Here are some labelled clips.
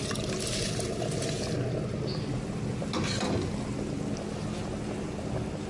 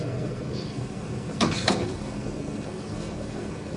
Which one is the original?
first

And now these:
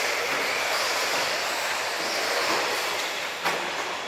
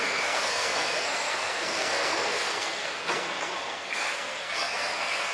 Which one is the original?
first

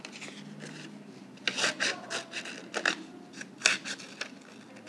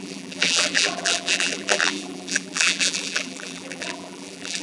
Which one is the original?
first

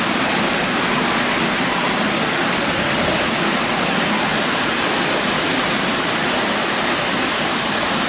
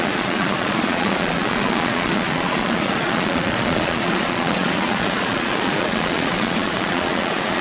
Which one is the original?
first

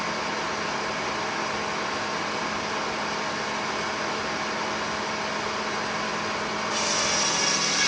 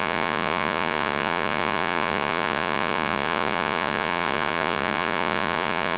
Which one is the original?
first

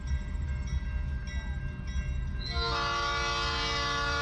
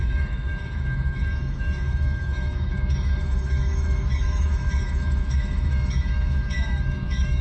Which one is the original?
first